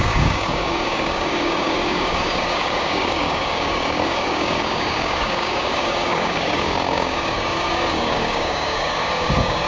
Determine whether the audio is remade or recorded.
remade